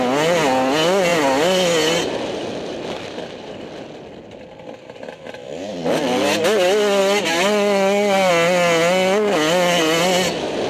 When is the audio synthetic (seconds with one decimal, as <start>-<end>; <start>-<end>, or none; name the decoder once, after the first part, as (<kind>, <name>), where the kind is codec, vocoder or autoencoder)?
none